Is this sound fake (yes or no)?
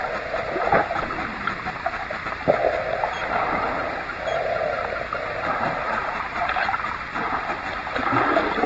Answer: yes